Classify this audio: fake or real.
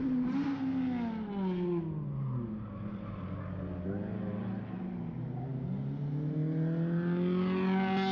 real